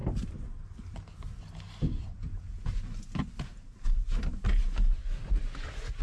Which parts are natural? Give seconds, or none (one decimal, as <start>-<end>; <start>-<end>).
0.0-2.1; 2.7-6.0